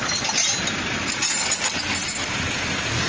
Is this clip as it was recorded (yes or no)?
yes